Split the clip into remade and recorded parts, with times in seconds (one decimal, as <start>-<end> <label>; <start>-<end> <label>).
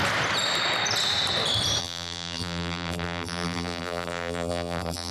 0.0-1.8 recorded; 1.8-5.1 remade